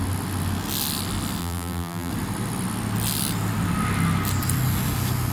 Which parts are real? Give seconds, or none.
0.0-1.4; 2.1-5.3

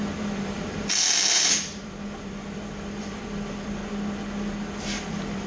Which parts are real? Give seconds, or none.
3.8-4.8

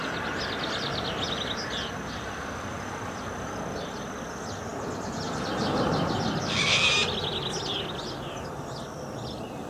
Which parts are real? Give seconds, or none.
0.0-9.7

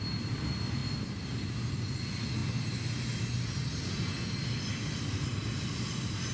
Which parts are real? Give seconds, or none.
0.8-1.7; 2.4-4.3

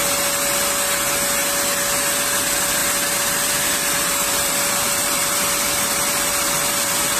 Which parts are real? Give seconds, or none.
0.0-2.8

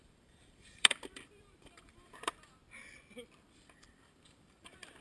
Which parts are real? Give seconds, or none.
2.6-3.4

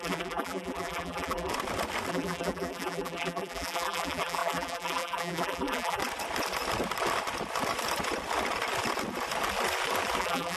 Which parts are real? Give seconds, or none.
1.5-2.1; 6.0-10.2

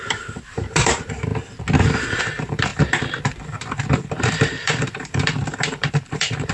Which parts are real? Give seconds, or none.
1.3-2.2